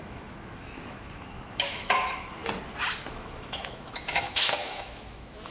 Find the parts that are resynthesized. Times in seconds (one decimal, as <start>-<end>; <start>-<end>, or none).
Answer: 0.0-2.4; 3.1-5.5